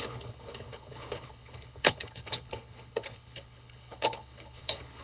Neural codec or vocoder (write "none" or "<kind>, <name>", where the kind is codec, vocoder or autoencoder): codec, HILCodec